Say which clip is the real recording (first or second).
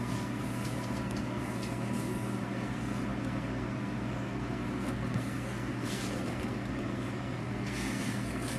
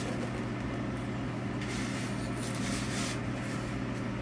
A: second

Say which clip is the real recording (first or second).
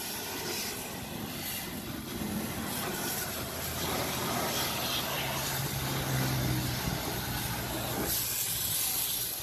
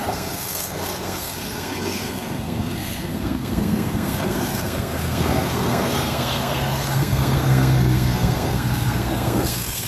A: first